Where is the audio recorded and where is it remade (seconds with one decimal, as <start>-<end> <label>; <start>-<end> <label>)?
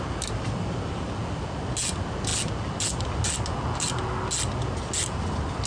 0.0-5.7 recorded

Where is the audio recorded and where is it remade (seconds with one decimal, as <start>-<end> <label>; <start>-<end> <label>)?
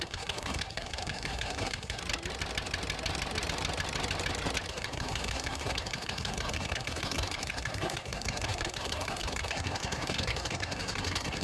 0.0-2.0 remade; 2.0-4.7 recorded; 4.7-11.4 remade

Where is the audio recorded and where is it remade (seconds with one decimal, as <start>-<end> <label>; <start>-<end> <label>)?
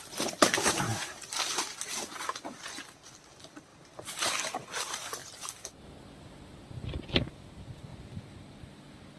0.0-3.7 recorded; 3.7-4.3 remade; 4.3-5.2 recorded; 5.2-6.8 remade; 6.8-9.2 recorded